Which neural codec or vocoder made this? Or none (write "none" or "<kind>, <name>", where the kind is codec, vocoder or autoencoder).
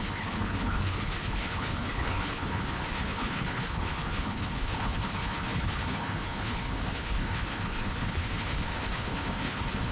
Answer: codec, HILCodec